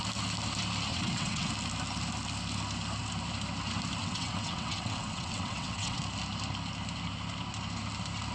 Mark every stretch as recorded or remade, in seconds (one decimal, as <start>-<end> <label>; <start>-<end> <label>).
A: 0.0-0.9 recorded; 0.9-1.5 remade; 1.5-4.0 recorded; 4.0-6.0 remade; 6.0-8.3 recorded